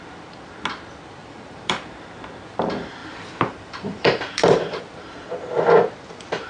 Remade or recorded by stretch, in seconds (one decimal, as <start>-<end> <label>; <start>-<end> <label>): 0.0-1.2 recorded; 1.2-2.1 remade; 2.1-3.0 recorded; 3.0-4.8 remade; 4.8-6.5 recorded